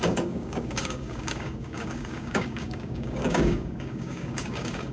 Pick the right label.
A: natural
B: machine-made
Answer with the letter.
B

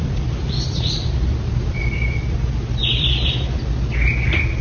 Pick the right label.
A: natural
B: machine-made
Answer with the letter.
A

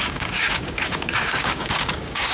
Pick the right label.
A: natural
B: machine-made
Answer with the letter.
B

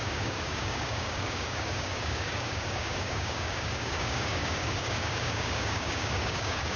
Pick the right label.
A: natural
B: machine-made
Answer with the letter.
B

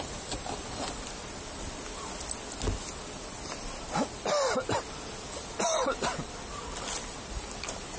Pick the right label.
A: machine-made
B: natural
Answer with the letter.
B